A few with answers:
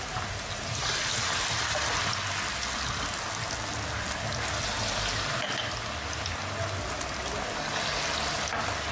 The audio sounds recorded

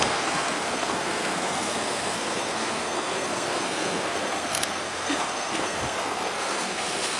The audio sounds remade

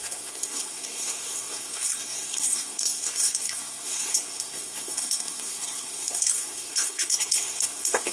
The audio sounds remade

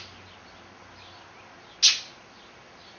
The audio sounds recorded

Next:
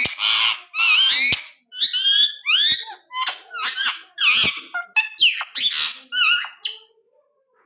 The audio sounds recorded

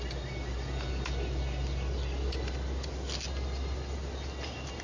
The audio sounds recorded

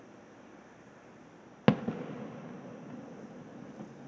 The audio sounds recorded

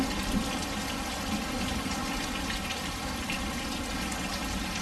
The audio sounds recorded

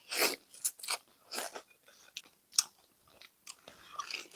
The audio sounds recorded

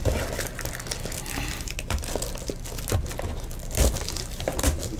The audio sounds recorded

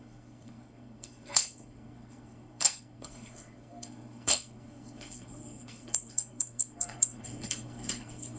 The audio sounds remade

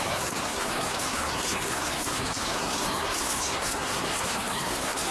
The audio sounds remade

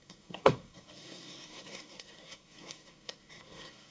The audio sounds remade